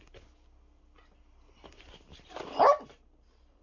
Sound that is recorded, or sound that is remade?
recorded